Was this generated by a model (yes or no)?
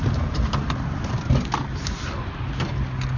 no